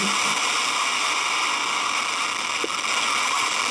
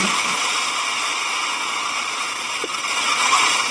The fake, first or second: second